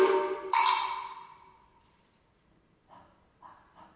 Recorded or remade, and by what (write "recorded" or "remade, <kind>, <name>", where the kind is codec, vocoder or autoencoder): recorded